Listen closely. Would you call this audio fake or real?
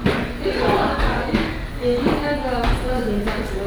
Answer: fake